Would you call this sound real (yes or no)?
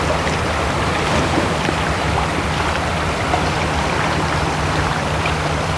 no